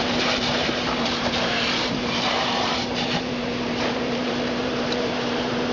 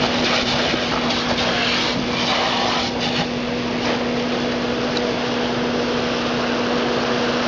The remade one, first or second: first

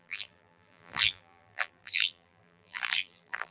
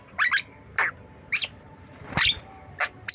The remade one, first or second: first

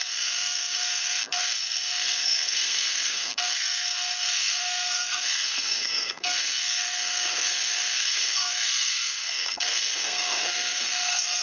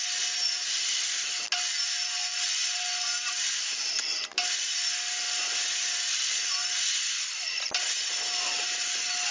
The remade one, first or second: first